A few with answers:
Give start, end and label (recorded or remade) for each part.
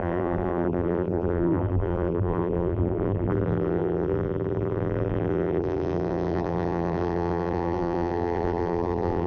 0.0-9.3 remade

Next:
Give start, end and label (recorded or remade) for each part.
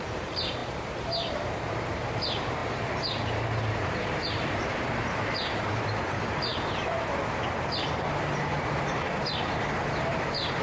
0.0-6.5 remade; 6.5-8.0 recorded; 8.0-10.6 remade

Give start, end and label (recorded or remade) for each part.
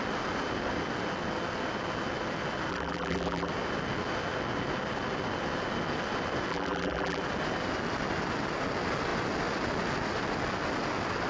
0.0-2.7 recorded; 2.7-3.5 remade; 3.5-6.5 recorded; 6.5-7.2 remade; 7.2-11.3 recorded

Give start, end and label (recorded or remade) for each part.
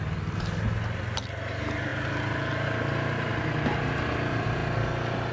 0.0-5.3 recorded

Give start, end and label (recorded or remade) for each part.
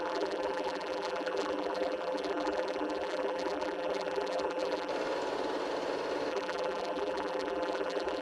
0.0-4.9 remade; 4.9-6.3 recorded; 6.3-8.2 remade